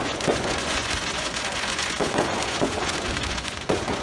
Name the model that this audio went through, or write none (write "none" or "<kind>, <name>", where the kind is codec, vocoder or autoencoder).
vocoder, Vocos